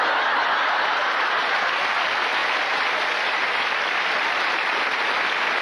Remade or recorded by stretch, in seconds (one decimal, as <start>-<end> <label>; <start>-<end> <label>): 0.0-5.6 recorded